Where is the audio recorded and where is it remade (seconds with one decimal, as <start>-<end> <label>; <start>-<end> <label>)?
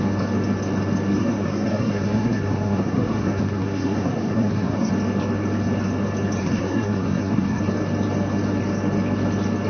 0.0-1.2 recorded; 1.2-4.9 remade; 4.9-6.4 recorded; 6.4-7.6 remade; 7.6-9.7 recorded